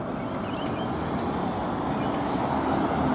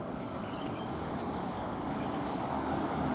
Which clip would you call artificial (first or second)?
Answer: second